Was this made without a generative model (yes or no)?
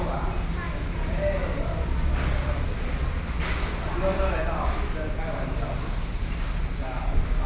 yes